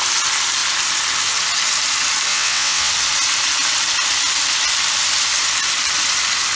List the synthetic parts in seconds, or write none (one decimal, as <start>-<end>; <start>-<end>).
2.3-2.9